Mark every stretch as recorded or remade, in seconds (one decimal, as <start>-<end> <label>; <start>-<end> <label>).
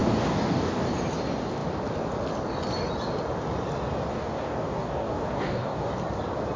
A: 0.0-0.8 remade; 0.8-4.1 recorded; 4.1-5.9 remade; 5.9-6.6 recorded